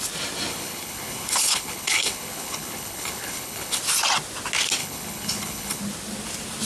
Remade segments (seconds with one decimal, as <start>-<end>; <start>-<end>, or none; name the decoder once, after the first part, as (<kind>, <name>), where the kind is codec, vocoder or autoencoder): 0.5-3.8 (codec, HILCodec); 4.8-5.8